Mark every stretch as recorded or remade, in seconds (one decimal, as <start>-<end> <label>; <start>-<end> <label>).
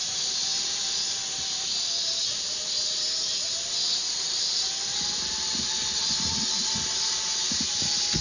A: 0.0-8.2 recorded